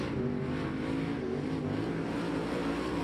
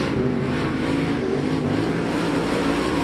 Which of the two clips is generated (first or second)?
second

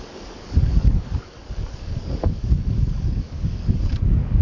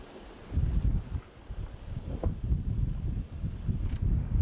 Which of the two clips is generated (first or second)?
first